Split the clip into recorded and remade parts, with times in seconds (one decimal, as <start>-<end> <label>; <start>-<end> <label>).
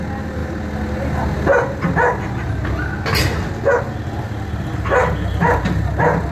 0.0-5.0 recorded; 5.0-6.3 remade